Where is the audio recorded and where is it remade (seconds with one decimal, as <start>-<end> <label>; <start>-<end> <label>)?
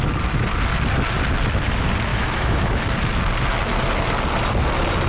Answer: 0.0-2.1 recorded; 2.1-2.8 remade; 2.8-5.1 recorded